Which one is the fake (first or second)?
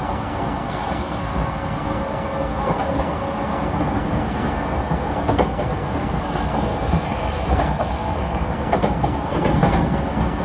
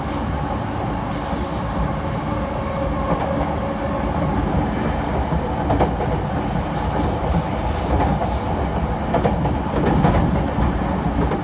first